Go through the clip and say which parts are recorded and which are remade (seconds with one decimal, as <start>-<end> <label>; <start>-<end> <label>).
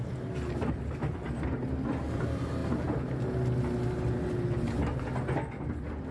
0.0-6.1 recorded